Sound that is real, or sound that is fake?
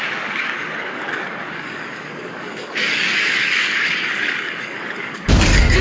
fake